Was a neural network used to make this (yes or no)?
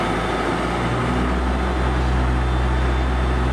no